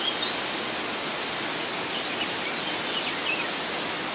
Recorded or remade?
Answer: recorded